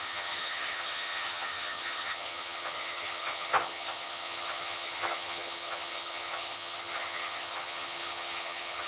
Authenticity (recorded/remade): remade